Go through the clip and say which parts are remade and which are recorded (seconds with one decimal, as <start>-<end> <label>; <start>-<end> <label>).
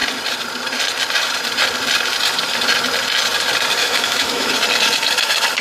0.0-3.8 recorded; 3.8-4.5 remade; 4.5-5.6 recorded